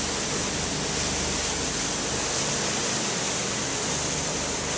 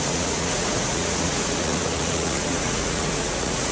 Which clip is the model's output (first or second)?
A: second